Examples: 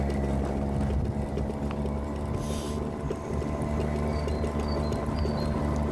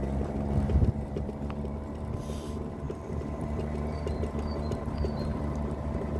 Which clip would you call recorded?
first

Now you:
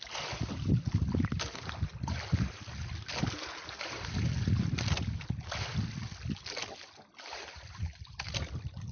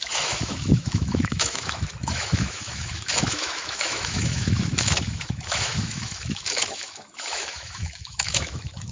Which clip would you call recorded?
first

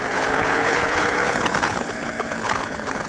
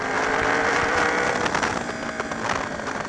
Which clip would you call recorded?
second